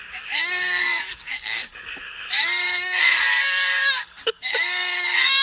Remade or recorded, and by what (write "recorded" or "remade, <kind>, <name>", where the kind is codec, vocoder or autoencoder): remade, codec, DAC